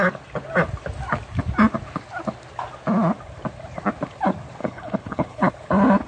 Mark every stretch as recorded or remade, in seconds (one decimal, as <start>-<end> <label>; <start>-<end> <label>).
0.0-4.6 recorded; 4.6-5.5 remade; 5.5-6.1 recorded